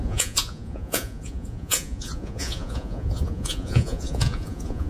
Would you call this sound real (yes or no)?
no